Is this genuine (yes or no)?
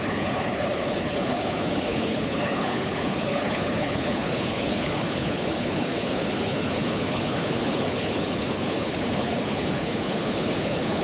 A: no